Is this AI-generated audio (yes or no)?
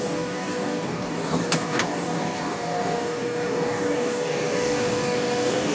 yes